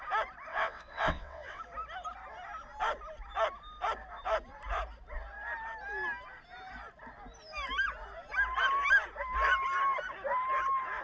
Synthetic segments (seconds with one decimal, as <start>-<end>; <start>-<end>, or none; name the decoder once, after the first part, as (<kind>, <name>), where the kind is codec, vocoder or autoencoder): 0.5-1.6 (vocoder, WaveNeXt)